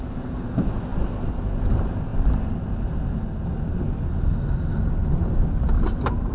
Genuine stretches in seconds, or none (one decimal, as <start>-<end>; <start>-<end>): 0.0-6.3